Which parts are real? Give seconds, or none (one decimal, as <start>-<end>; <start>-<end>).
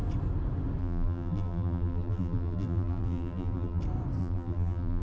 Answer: 0.0-0.8; 3.8-4.2